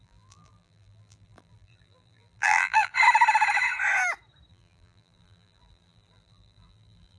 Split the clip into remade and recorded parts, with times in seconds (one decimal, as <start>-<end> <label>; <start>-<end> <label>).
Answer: 0.0-2.9 remade; 2.9-4.5 recorded; 4.5-7.2 remade